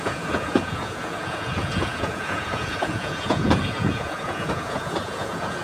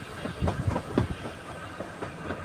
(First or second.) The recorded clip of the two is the second